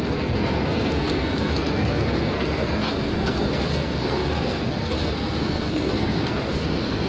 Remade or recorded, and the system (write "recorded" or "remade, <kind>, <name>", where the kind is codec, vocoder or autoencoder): remade, codec, SNAC